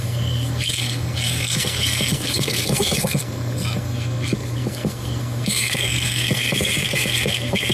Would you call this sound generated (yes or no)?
yes